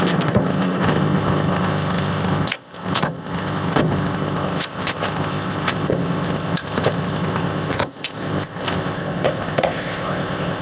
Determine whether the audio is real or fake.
fake